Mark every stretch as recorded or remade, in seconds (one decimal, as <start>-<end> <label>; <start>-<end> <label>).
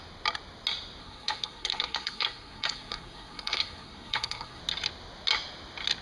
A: 0.0-1.0 recorded; 1.0-4.6 remade; 4.6-6.0 recorded